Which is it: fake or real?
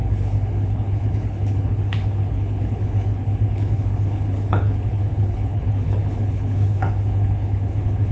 fake